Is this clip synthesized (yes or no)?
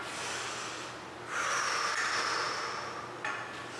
no